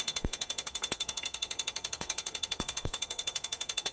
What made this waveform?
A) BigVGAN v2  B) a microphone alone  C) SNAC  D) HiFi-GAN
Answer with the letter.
C